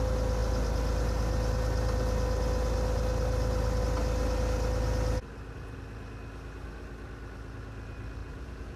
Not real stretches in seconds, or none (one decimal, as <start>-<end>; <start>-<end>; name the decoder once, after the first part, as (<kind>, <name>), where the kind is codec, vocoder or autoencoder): 8.2-8.8 (vocoder, Vocos)